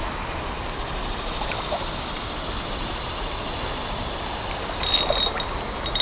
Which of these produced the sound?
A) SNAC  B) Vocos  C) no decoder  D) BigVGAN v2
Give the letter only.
C